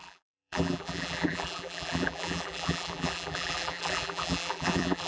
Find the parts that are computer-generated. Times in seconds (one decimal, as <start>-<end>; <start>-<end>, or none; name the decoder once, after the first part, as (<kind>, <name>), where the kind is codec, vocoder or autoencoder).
0.0-5.1 (vocoder, BigVGAN v2)

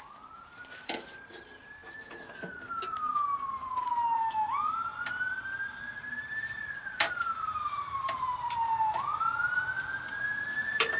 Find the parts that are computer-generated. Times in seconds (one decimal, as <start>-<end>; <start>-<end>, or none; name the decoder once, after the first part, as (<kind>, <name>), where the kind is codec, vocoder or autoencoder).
0.0-1.8 (vocoder, BigVGAN v2); 3.8-4.9; 6.0-9.1; 10.2-11.0

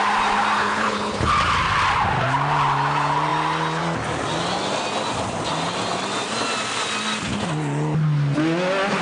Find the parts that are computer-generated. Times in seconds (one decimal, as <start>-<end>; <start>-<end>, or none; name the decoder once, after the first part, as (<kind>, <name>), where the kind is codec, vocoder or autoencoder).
0.6-1.3 (codec, HILCodec)

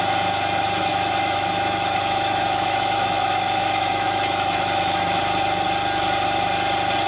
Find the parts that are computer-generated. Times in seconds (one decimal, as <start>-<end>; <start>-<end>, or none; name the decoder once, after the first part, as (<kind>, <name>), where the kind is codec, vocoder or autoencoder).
0.9-5.2 (autoencoder, DAC-VAE)